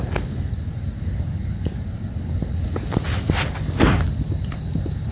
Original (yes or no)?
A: yes